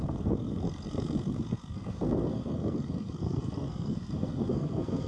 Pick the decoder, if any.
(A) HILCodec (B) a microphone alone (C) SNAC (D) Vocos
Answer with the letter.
C